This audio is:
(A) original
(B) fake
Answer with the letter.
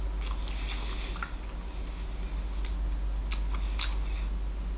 A